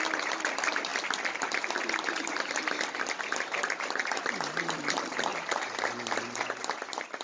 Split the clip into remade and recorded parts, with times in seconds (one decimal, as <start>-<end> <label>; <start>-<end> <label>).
0.0-7.2 recorded